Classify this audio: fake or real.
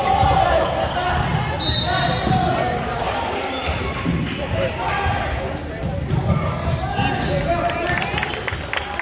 real